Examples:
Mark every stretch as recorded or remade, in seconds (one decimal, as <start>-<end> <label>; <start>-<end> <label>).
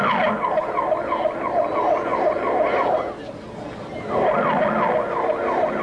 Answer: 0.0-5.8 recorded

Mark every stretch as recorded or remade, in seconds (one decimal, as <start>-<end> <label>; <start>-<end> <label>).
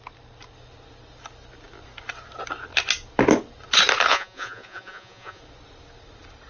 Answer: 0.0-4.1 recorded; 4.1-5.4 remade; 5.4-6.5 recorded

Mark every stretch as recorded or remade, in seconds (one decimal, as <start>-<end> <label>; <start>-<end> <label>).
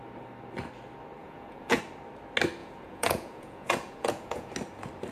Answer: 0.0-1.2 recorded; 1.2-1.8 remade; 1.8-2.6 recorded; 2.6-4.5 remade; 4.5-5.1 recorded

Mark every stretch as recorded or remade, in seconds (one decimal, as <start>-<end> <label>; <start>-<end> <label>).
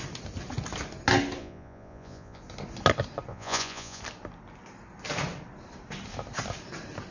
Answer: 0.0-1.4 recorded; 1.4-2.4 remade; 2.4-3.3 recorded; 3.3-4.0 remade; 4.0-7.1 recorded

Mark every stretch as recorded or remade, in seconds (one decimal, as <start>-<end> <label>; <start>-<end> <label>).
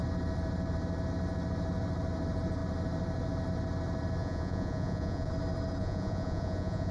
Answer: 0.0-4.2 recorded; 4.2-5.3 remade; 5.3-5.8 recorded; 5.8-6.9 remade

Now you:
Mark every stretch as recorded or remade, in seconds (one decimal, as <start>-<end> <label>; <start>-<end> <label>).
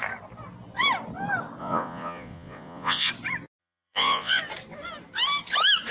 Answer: 0.0-1.6 recorded; 1.6-3.1 remade; 3.1-3.6 recorded; 3.6-4.4 remade; 4.4-5.9 recorded